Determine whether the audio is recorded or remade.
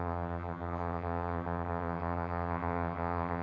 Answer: remade